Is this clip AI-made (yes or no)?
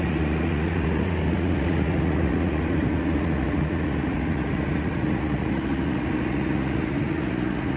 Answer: yes